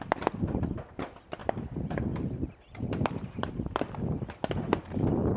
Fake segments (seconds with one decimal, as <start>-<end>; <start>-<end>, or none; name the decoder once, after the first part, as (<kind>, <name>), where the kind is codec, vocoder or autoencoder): 1.4-3.5 (vocoder, BigVGAN v2)